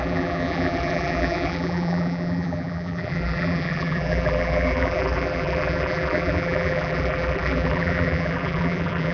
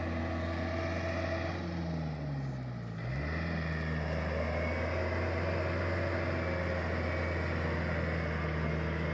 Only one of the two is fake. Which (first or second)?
first